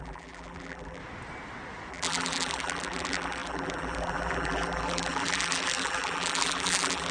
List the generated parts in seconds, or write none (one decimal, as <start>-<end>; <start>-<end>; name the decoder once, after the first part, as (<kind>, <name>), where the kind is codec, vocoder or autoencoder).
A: 0.0-1.0 (vocoder, BigVGAN v2); 1.9-7.1

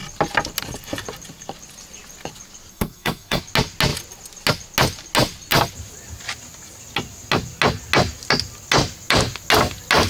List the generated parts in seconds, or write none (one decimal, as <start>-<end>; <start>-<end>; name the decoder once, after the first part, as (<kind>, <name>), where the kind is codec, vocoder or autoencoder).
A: 2.7-3.4 (codec, SNAC)